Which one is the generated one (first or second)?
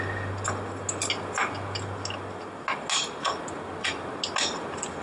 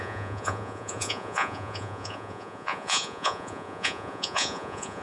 second